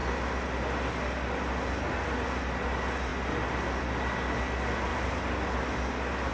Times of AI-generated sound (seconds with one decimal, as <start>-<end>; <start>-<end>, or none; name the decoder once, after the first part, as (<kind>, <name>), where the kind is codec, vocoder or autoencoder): none